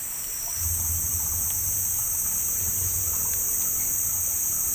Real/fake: real